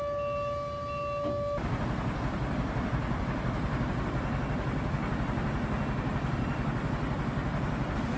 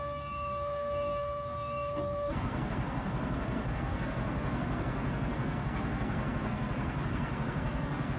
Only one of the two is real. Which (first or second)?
first